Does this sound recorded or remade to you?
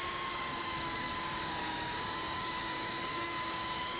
remade